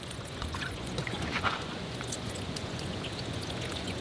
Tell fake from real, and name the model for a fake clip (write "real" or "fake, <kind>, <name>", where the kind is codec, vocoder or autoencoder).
fake, vocoder, Vocos